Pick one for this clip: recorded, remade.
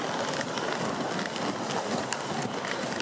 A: recorded